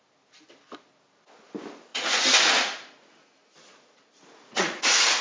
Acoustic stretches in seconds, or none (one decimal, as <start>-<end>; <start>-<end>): 0.0-1.9